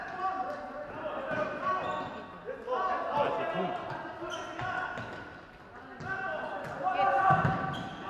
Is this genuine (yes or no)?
yes